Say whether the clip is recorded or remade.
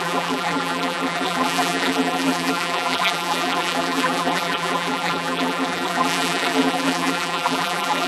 remade